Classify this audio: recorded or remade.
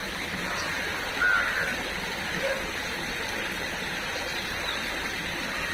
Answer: recorded